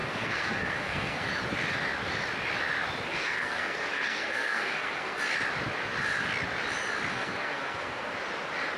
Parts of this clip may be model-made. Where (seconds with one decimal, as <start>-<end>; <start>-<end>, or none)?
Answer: 0.0-1.3; 3.1-5.2; 7.1-8.1